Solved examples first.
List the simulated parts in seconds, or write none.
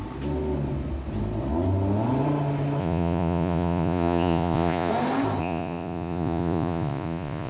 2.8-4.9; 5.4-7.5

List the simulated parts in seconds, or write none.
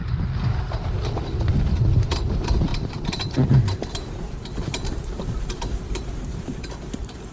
2.7-6.5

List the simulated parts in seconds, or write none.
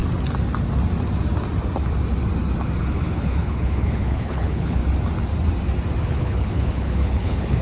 2.8-4.8; 6.0-7.6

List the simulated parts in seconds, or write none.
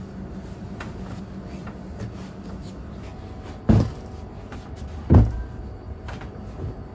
none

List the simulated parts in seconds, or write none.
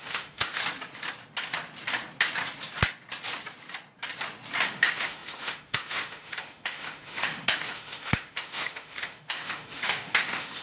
0.0-0.6; 4.7-10.6